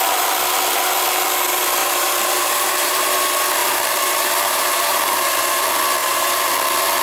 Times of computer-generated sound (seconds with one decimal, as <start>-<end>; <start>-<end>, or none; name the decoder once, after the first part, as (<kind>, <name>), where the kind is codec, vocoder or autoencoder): 1.8-3.2 (vocoder, BigVGAN v2); 3.6-5.6; 6.0-6.5